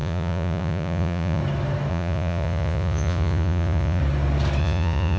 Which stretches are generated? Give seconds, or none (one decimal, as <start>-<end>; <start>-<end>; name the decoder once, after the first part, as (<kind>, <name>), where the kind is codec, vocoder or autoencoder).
0.0-1.4 (vocoder, Vocos); 1.9-4.0; 4.6-5.2